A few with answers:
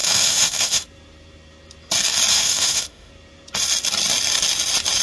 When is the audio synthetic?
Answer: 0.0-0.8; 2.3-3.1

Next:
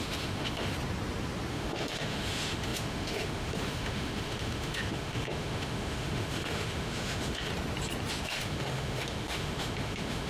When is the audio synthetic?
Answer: 0.0-0.7; 1.5-7.5; 8.1-10.3

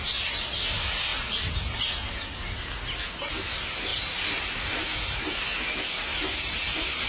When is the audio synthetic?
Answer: none